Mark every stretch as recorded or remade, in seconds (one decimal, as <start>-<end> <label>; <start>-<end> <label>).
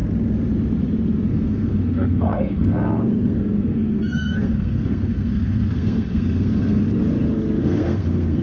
0.0-1.3 recorded; 1.3-6.8 remade; 6.8-7.6 recorded; 7.6-8.4 remade